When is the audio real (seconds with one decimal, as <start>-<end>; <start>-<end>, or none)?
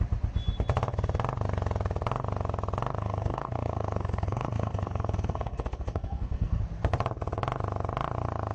0.0-3.0; 6.6-8.5